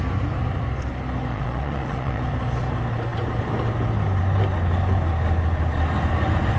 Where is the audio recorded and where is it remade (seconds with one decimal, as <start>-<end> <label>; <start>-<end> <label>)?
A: 0.0-1.3 recorded; 1.3-2.2 remade; 2.2-6.6 recorded

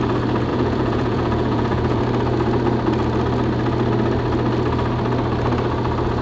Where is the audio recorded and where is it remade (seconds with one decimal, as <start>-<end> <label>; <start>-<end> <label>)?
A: 0.0-0.5 recorded; 0.5-2.0 remade; 2.0-6.2 recorded

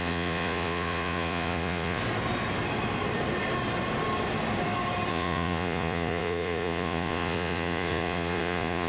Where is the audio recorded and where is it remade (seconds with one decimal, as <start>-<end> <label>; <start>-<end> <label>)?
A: 0.0-2.0 remade; 2.0-5.1 recorded; 5.1-8.9 remade